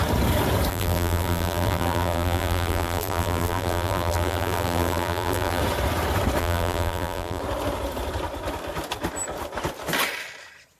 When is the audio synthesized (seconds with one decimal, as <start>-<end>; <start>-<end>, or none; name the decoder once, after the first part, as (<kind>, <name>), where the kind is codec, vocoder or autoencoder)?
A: 0.7-5.6 (vocoder, BigVGAN v2); 6.4-7.4